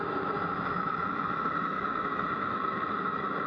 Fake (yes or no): yes